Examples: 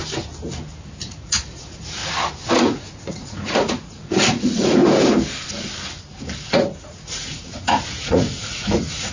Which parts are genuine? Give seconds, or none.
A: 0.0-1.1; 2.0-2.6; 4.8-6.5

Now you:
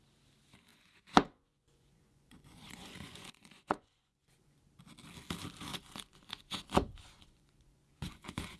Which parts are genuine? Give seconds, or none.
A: 0.0-0.7; 4.6-5.7

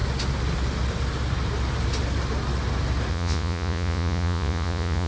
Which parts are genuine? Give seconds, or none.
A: 0.0-3.1

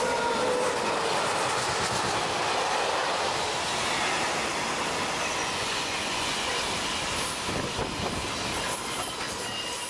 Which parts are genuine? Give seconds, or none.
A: 0.0-5.4; 6.5-9.9

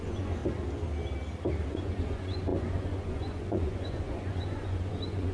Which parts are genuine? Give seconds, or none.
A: 0.4-1.7

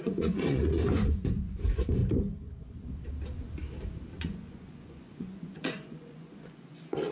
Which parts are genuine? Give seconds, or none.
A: 2.0-4.1